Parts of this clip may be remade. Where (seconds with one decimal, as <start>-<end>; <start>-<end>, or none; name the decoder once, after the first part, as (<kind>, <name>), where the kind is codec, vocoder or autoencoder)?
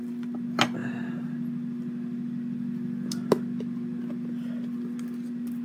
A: none